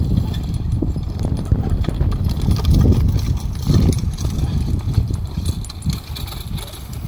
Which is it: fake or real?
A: real